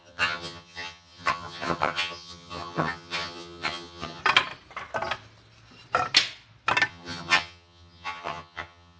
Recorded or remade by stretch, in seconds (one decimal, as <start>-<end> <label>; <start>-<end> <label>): 0.0-4.2 remade; 4.2-6.9 recorded; 6.9-9.0 remade